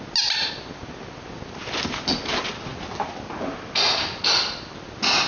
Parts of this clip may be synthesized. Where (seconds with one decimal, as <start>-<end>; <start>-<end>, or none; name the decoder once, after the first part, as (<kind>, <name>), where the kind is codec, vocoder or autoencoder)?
none